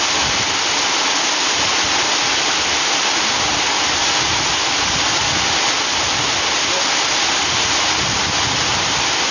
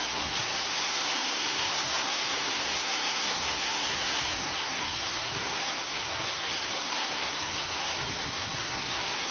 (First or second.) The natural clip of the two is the first